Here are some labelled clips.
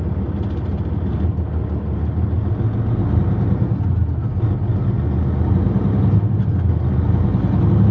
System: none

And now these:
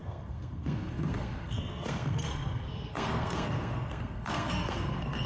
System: codec, SNAC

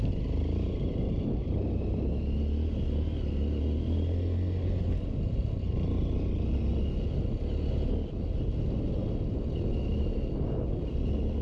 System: none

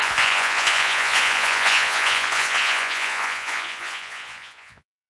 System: vocoder, Vocos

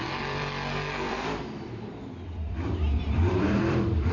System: vocoder, BigVGAN v2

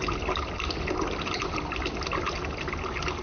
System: none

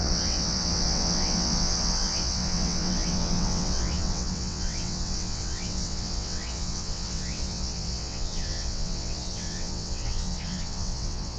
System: vocoder, WaveNeXt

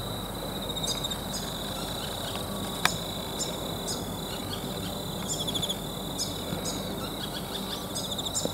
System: none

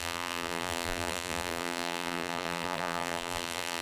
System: vocoder, BigVGAN v2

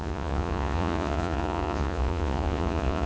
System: vocoder, Vocos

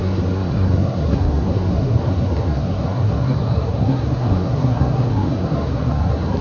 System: codec, SNAC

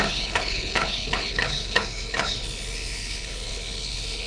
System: codec, HILCodec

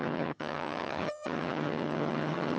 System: vocoder, HiFi-GAN